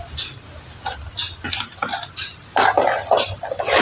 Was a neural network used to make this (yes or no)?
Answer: no